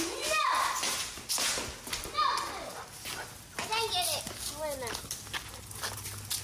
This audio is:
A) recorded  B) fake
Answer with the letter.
A